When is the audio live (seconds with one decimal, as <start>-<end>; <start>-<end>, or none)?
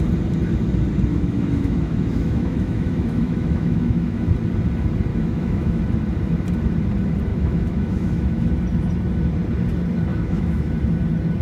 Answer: 0.0-1.1; 4.3-5.1; 5.8-7.3; 8.5-10.1; 10.7-11.4